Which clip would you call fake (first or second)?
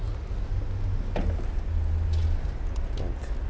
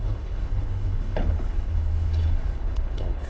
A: second